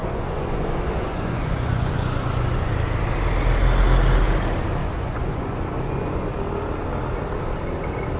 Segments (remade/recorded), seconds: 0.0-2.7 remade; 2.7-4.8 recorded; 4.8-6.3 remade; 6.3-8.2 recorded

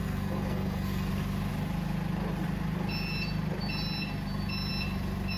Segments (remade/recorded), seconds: 0.0-1.1 remade; 1.1-5.4 recorded